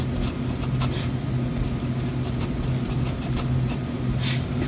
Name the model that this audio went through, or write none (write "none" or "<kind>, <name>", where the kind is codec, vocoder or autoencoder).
none